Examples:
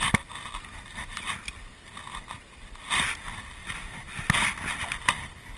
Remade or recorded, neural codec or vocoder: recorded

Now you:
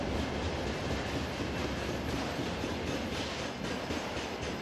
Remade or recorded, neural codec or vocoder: recorded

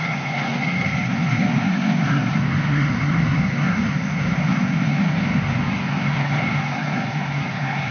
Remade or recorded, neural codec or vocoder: remade, codec, SNAC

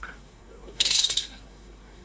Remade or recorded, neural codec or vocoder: remade, codec, SNAC